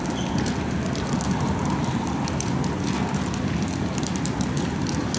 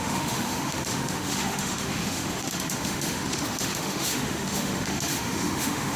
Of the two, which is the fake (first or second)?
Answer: second